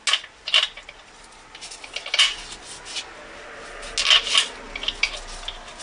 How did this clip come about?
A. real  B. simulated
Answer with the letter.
A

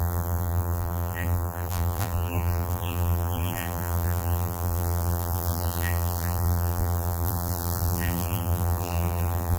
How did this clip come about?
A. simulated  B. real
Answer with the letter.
A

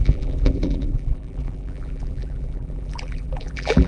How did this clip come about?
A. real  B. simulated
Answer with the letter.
B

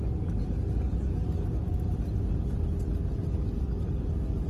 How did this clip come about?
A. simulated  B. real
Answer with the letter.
B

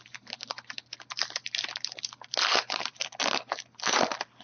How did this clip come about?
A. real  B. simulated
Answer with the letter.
A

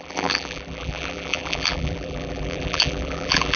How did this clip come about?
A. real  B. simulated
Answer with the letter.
B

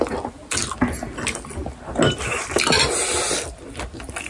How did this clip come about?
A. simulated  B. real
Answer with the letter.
B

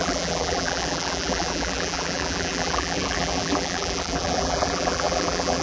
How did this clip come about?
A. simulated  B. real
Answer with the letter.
A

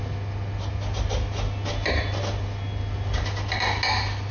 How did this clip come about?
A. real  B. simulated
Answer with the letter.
A